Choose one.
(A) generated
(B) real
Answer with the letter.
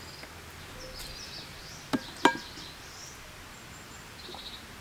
B